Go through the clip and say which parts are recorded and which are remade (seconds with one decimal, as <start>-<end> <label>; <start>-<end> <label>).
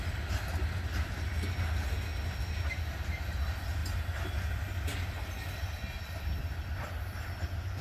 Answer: 0.0-7.8 recorded